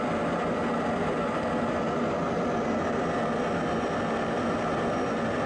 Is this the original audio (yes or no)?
yes